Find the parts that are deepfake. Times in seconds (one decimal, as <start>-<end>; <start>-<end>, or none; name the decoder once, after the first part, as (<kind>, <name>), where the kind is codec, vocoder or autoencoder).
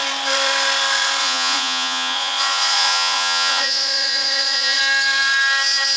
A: 1.2-4.8 (vocoder, Vocos)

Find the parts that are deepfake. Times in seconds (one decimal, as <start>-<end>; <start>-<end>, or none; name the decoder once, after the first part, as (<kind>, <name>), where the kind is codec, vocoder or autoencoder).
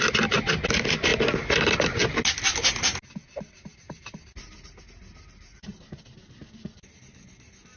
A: none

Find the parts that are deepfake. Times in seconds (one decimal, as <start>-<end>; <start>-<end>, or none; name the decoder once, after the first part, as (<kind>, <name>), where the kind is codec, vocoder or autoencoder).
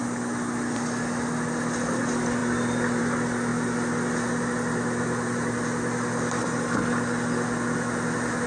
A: none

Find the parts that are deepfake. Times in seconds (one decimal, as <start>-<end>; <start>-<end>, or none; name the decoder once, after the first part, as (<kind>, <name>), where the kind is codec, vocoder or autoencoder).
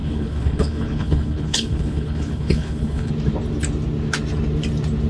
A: 0.0-3.1 (codec, HILCodec)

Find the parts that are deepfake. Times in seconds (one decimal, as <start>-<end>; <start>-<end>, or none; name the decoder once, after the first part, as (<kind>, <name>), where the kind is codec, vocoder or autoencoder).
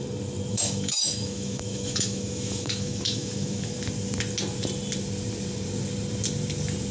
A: 0.5-3.7 (autoencoder, DAC-VAE)